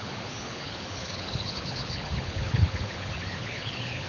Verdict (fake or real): fake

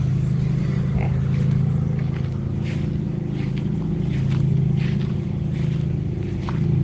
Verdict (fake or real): real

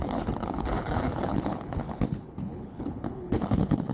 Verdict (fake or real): fake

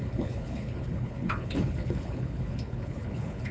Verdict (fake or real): fake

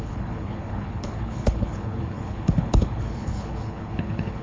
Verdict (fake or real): fake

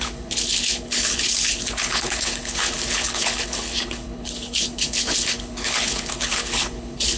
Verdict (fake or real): fake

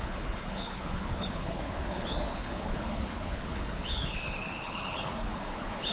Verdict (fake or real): fake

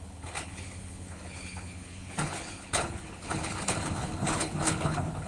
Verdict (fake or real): fake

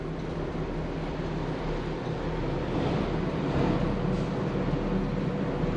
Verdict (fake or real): real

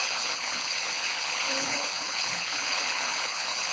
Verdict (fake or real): fake